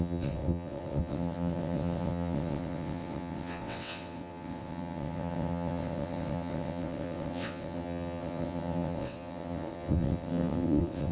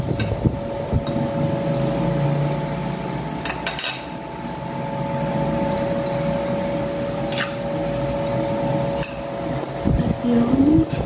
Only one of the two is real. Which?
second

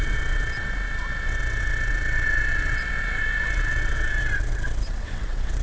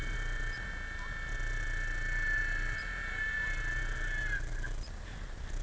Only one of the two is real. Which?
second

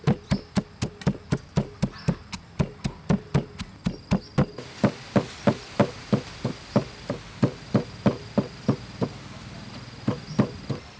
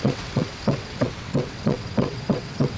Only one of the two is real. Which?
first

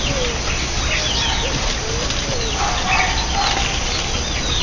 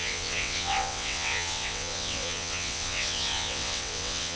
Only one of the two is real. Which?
first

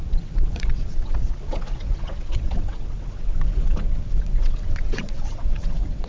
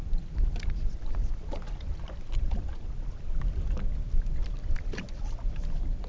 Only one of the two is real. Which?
second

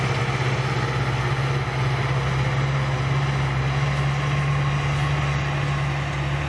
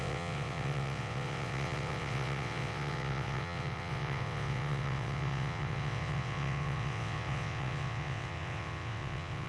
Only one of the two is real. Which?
first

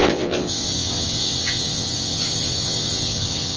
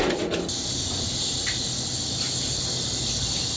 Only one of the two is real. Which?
second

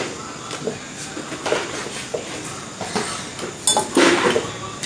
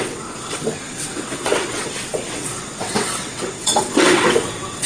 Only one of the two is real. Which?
first